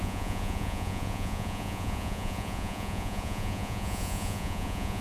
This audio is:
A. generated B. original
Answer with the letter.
A